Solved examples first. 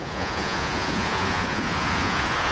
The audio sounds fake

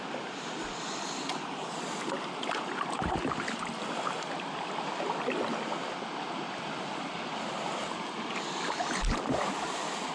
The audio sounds real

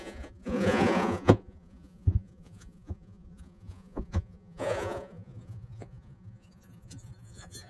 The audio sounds fake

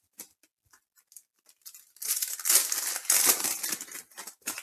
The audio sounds real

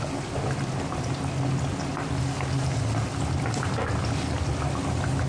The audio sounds real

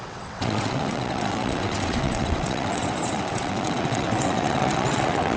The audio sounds fake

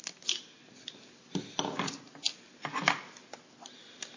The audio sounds real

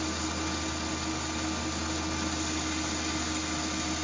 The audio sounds real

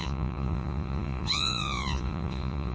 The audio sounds fake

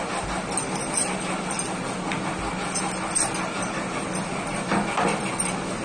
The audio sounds real